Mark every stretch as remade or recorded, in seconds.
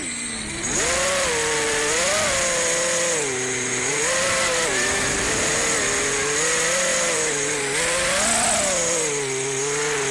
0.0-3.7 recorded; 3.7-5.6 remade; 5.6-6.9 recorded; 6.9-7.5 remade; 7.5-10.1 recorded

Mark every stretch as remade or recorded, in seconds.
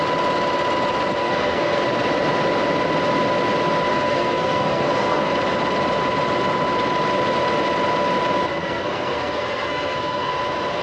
0.0-1.2 recorded; 1.2-1.8 remade; 1.8-3.9 recorded; 3.9-5.3 remade; 5.3-8.6 recorded; 8.6-10.3 remade; 10.3-10.8 recorded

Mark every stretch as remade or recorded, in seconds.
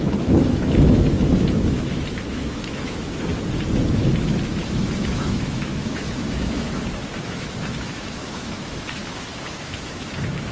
0.0-3.3 remade; 3.3-3.9 recorded; 3.9-10.5 remade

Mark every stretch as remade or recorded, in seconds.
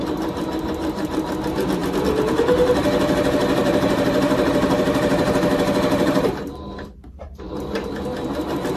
0.0-1.1 remade; 1.1-3.6 recorded; 3.6-7.9 remade; 7.9-8.8 recorded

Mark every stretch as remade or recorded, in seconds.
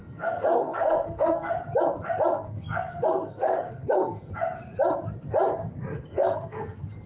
0.0-1.5 remade; 1.5-2.3 recorded; 2.3-4.3 remade; 4.3-5.9 recorded; 5.9-7.1 remade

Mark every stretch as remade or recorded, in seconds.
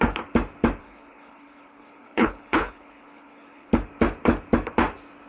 0.0-0.8 recorded; 0.8-3.7 remade; 3.7-5.3 recorded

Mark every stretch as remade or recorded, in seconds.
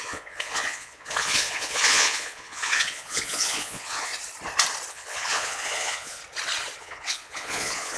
0.0-4.1 remade; 4.1-4.9 recorded; 4.9-6.2 remade; 6.2-6.8 recorded; 6.8-8.0 remade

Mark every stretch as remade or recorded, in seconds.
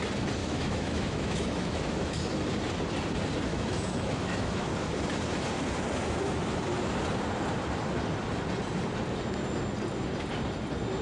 0.0-0.4 recorded; 0.4-2.3 remade; 2.3-3.5 recorded; 3.5-4.7 remade; 4.7-11.0 recorded